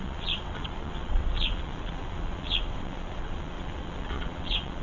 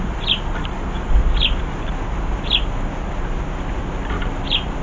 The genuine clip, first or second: second